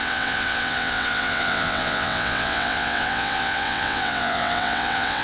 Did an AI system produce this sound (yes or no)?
yes